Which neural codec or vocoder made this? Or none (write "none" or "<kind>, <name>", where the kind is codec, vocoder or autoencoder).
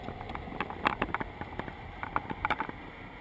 none